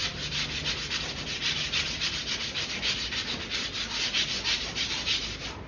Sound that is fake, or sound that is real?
real